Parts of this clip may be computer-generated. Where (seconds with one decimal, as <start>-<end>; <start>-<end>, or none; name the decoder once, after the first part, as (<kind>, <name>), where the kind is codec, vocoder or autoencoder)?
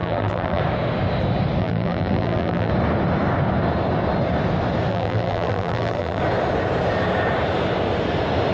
0.0-0.6 (vocoder, BigVGAN v2); 1.6-2.7; 4.9-6.2